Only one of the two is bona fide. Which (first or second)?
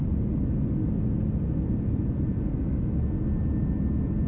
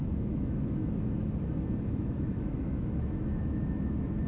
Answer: first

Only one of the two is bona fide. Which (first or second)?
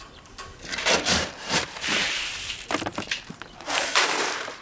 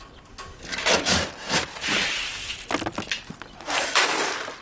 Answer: second